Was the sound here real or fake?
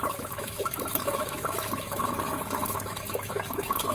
fake